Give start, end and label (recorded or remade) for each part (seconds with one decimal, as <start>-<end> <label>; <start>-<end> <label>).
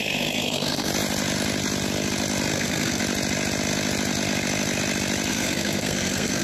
0.0-0.9 remade; 0.9-2.5 recorded; 2.5-3.0 remade; 3.0-5.3 recorded; 5.3-6.4 remade